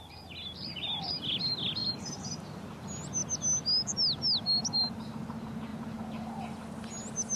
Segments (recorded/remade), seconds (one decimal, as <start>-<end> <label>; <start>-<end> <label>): 0.0-1.8 recorded; 1.8-2.8 remade; 2.8-7.4 recorded